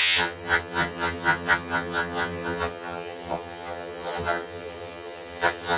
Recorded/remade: remade